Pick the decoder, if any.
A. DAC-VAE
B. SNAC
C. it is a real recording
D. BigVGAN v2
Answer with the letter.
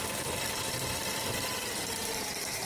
D